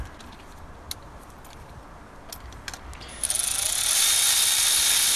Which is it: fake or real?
real